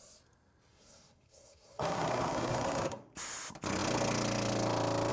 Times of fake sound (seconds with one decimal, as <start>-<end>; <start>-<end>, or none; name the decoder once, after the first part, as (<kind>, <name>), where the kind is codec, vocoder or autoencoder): 0.7-3.0 (codec, SNAC)